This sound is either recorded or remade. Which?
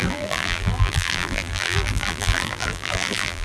remade